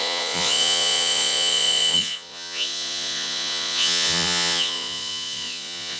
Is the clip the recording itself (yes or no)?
no